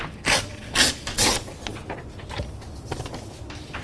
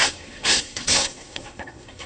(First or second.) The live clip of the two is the first